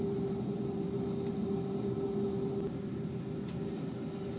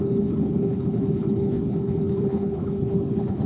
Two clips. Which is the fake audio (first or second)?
second